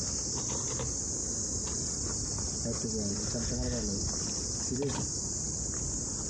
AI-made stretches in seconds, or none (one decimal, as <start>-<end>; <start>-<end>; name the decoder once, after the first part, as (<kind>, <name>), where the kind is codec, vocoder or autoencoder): none